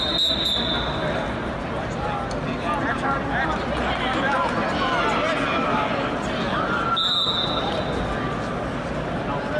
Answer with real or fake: real